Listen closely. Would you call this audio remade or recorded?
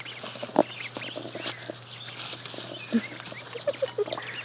recorded